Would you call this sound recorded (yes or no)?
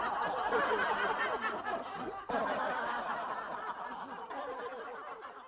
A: yes